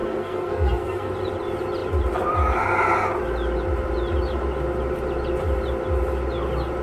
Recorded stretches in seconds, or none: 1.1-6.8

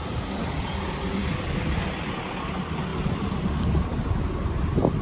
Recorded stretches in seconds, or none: 0.0-5.0

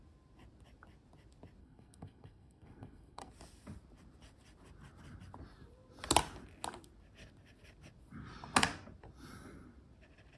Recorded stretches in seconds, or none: 0.0-1.6; 3.3-10.4

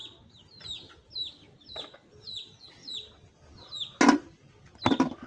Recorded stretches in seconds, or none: 0.0-5.3